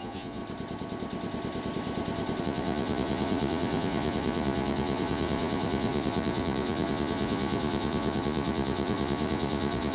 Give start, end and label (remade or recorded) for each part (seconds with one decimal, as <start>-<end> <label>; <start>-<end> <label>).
0.0-0.4 remade; 0.4-2.4 recorded; 2.4-9.9 remade